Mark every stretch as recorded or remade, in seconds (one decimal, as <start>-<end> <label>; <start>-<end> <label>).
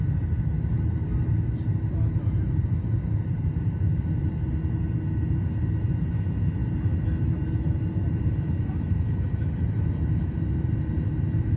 0.0-11.6 remade